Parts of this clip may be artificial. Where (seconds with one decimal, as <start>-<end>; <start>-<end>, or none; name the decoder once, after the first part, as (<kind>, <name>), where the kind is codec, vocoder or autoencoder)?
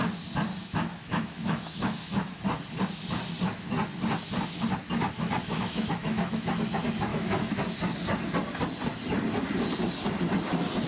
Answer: 0.6-2.4 (autoencoder, DAC-VAE); 5.4-6.5; 7.1-7.6